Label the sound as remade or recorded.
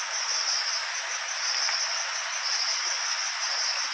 recorded